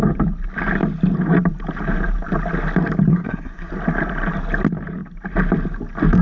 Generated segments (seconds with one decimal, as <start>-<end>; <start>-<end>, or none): 3.1-3.7